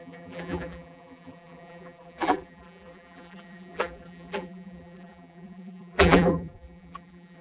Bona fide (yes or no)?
no